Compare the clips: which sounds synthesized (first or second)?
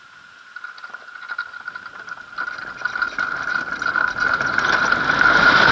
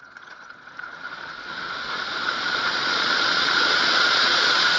second